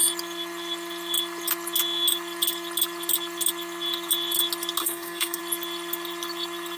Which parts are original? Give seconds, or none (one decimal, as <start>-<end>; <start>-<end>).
0.0-4.8; 5.4-6.8